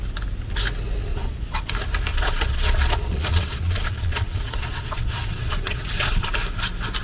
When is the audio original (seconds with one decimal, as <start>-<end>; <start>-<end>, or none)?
0.0-1.1; 1.7-2.1; 6.3-7.0